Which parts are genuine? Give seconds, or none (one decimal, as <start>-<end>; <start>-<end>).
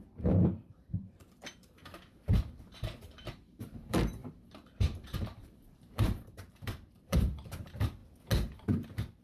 1.8-3.3; 8.0-9.2